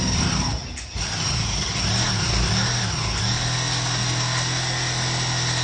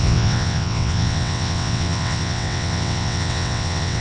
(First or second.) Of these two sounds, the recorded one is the first